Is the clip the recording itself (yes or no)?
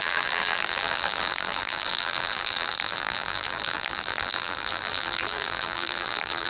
no